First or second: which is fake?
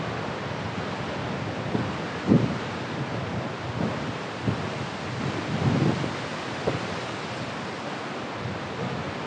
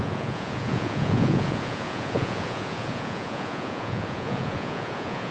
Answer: second